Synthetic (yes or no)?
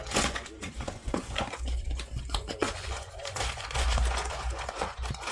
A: yes